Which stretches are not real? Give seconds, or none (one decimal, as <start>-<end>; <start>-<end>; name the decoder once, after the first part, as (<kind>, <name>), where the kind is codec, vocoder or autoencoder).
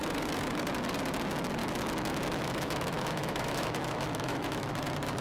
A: 1.6-4.7 (autoencoder, DAC-VAE)